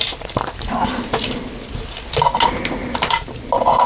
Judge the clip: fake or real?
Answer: real